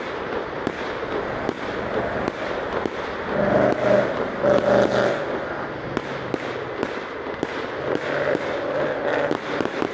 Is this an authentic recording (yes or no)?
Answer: yes